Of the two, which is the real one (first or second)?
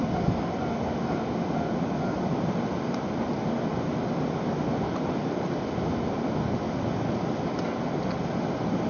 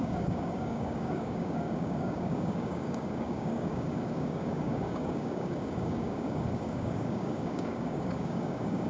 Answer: first